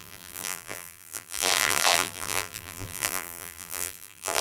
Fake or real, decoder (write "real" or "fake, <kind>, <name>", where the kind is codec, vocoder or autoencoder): fake, vocoder, BigVGAN v2